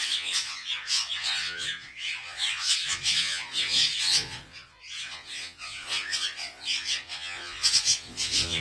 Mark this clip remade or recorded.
remade